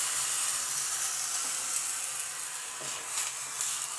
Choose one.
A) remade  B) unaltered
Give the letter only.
B